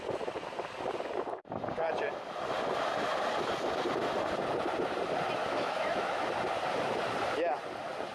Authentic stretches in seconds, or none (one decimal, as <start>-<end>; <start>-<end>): 0.0-5.4; 6.2-8.1